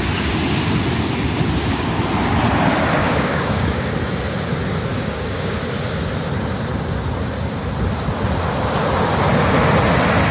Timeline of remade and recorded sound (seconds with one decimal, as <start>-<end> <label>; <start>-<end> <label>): 0.0-3.0 recorded; 3.0-3.9 remade; 3.9-4.9 recorded; 4.9-5.6 remade; 5.6-10.3 recorded